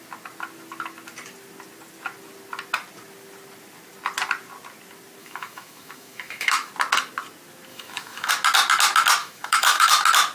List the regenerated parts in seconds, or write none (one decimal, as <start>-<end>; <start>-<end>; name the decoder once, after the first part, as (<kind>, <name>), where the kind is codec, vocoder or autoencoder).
5.2-6.7 (autoencoder, DAC-VAE); 7.7-8.3; 9.2-9.9

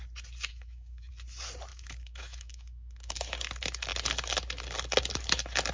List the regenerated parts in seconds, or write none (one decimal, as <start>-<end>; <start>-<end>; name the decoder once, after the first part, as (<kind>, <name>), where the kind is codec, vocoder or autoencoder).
0.5-1.1 (autoencoder, DAC-VAE); 1.7-3.1

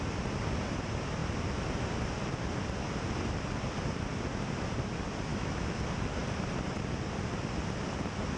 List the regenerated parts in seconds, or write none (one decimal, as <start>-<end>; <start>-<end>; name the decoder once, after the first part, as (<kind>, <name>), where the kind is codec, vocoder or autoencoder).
5.3-5.8 (autoencoder, DAC-VAE)

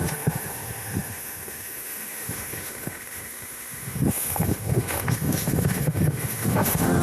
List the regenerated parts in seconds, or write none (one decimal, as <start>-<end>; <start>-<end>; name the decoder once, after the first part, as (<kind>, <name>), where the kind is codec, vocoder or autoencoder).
0.0-7.0 (autoencoder, DAC-VAE)